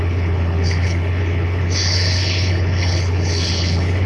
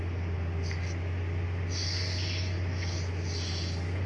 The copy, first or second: first